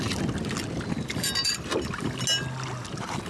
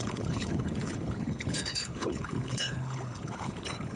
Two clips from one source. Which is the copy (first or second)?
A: second